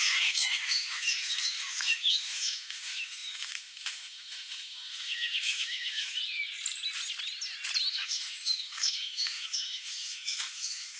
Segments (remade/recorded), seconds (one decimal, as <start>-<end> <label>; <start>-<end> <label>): 0.0-6.2 remade; 6.2-7.9 recorded; 7.9-11.0 remade